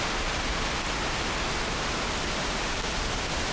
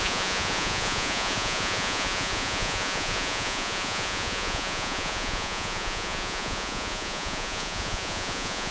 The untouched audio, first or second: first